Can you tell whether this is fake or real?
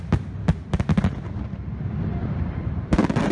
real